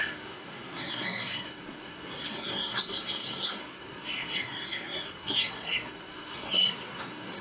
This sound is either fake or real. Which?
fake